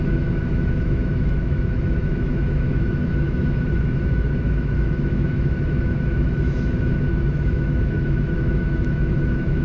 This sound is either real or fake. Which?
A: fake